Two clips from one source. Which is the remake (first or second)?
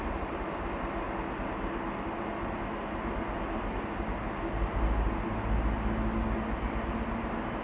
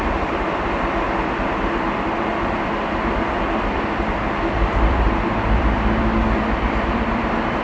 second